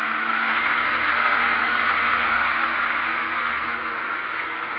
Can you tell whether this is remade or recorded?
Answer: remade